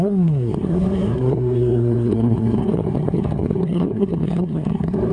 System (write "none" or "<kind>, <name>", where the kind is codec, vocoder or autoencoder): codec, SNAC